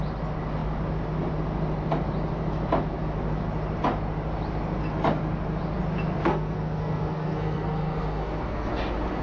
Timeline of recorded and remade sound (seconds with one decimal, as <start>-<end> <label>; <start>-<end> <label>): 0.0-6.2 recorded; 6.2-8.7 remade; 8.7-9.2 recorded